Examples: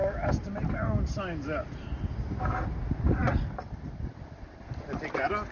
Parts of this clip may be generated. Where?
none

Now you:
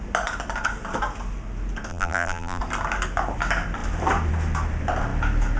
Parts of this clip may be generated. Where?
1.9-2.6

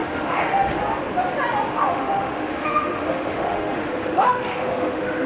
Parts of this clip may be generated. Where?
0.0-0.8; 1.8-5.3

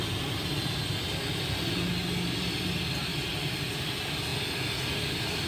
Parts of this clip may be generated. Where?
3.3-4.3; 5.1-5.5

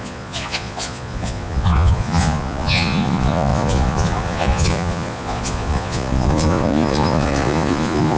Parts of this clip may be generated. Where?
0.0-8.2